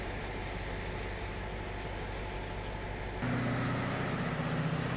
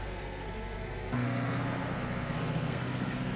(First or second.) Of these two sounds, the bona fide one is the first